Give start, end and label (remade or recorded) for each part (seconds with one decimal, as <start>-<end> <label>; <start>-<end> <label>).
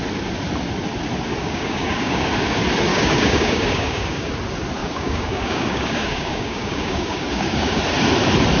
0.0-1.4 recorded; 1.4-2.3 remade; 2.3-2.9 recorded; 2.9-4.3 remade; 4.3-4.8 recorded; 4.8-7.8 remade; 7.8-8.6 recorded